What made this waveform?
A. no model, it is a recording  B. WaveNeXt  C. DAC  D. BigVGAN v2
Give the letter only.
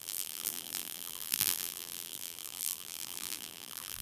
D